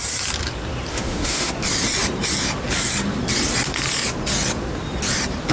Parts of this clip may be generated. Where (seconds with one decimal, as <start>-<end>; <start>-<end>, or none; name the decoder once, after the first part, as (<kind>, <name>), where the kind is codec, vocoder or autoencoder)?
0.9-1.5 (autoencoder, DAC-VAE)